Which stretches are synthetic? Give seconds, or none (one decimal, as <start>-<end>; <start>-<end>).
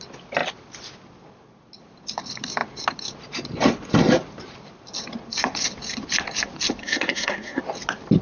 6.8-7.6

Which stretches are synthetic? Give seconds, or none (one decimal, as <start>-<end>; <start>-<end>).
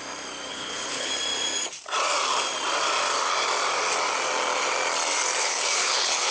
0.5-1.1; 5.4-6.3